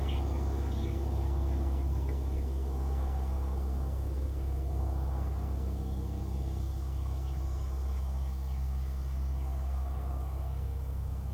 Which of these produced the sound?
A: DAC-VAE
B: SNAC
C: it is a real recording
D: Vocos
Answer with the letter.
B